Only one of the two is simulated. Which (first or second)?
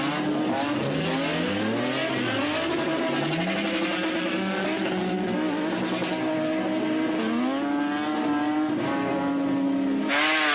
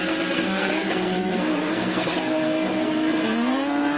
second